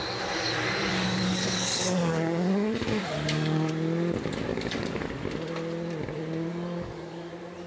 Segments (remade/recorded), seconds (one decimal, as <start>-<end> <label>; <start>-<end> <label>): 0.0-0.9 recorded; 0.9-3.7 remade; 3.7-4.5 recorded; 4.5-5.1 remade; 5.1-6.5 recorded; 6.5-7.3 remade; 7.3-7.7 recorded

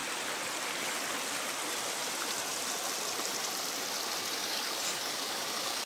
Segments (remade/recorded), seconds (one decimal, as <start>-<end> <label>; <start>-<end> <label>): 0.0-4.4 recorded; 4.4-5.9 remade

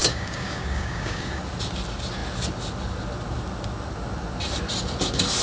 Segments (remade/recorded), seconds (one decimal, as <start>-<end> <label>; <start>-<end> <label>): 0.0-1.4 remade; 1.4-5.4 recorded